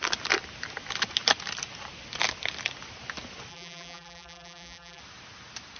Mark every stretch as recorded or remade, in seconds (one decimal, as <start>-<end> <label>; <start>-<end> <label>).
0.0-3.5 recorded; 3.5-5.0 remade; 5.0-5.8 recorded